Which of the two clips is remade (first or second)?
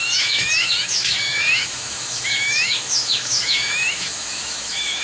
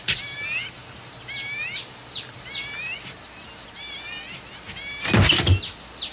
first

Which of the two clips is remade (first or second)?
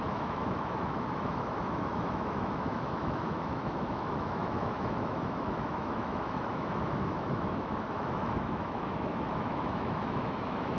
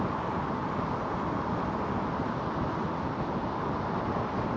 first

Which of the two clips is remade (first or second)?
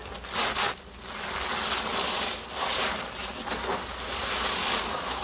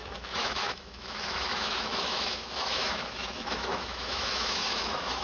second